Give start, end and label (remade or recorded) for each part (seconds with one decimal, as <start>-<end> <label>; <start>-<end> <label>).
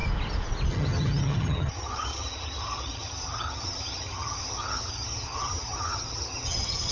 0.0-0.7 recorded; 0.7-6.9 remade